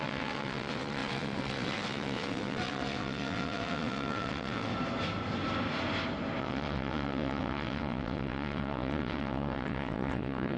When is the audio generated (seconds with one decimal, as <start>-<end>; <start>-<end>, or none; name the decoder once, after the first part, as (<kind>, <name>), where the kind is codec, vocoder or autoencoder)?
0.0-4.7 (vocoder, WaveNeXt); 6.4-10.6